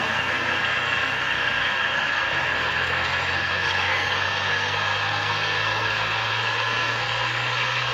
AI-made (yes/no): yes